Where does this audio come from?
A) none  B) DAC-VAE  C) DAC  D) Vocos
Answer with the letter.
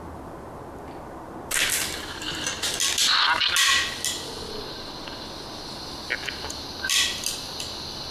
A